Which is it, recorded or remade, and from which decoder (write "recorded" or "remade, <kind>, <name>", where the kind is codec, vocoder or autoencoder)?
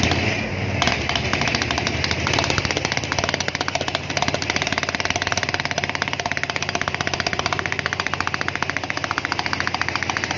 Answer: recorded